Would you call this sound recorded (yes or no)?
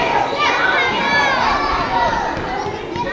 yes